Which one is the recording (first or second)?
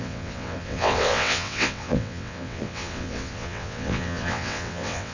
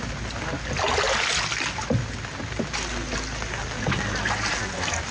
second